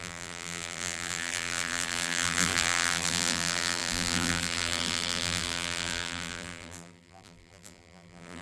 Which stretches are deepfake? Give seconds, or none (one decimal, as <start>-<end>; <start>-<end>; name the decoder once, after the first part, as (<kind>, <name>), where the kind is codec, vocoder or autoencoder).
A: 0.0-8.4 (vocoder, BigVGAN v2)